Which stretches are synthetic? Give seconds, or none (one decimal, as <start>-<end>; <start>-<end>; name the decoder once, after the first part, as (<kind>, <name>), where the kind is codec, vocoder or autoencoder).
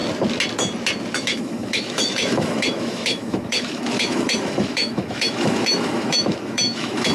1.2-7.1 (autoencoder, DAC-VAE)